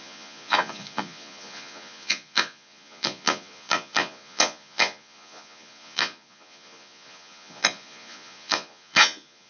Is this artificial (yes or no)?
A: yes